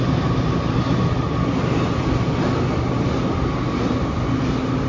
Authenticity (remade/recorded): recorded